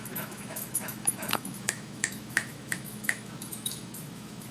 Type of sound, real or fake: fake